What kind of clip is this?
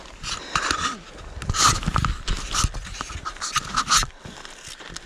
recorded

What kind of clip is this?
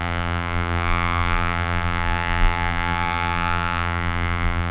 remade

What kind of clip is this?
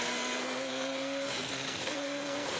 remade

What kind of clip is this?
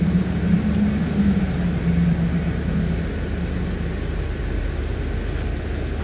recorded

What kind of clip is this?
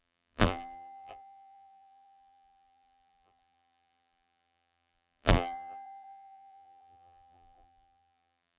remade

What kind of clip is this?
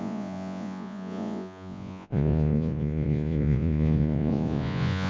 remade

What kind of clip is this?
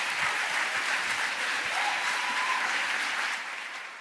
remade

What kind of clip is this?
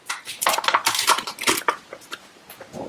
recorded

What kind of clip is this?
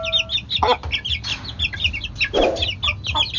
recorded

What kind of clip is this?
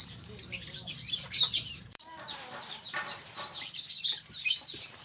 remade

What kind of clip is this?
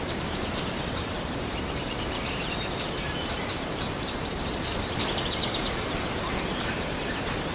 remade